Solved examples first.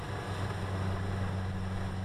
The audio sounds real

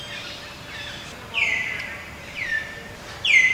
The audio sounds fake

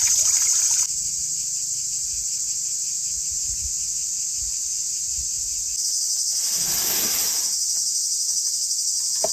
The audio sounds real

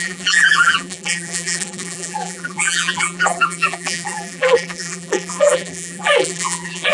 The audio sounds fake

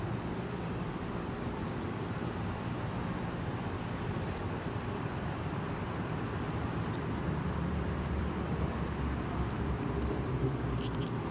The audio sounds fake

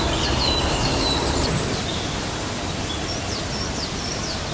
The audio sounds real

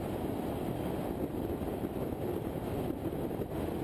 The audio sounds real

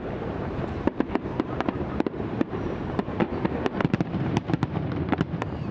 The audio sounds fake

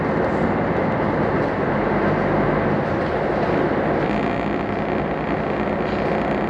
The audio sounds real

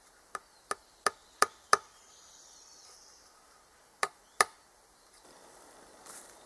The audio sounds fake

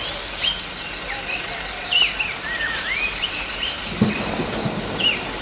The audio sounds real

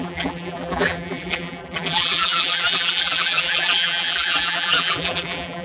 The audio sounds fake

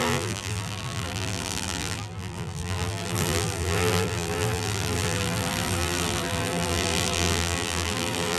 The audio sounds fake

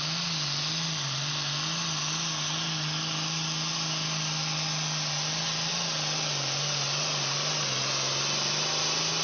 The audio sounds real